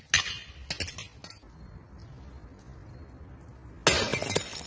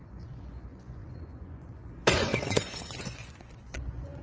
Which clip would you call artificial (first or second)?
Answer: second